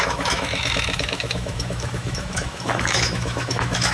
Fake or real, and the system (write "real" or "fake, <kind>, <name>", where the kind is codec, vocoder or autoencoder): fake, autoencoder, DAC-VAE